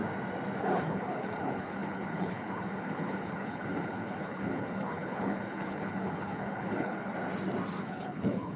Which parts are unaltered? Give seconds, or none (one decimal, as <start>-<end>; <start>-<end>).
0.0-0.6; 7.1-7.8